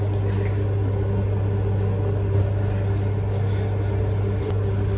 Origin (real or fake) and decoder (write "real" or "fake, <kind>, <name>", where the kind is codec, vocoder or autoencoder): real